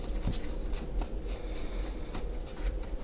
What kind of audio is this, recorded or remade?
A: recorded